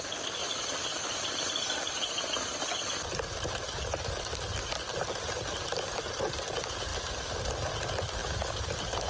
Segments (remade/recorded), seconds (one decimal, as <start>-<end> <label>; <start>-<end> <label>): 0.0-0.4 recorded; 0.4-1.4 remade; 1.4-8.2 recorded; 8.2-9.1 remade